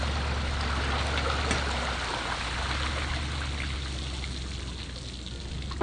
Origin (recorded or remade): recorded